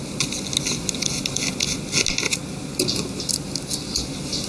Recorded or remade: recorded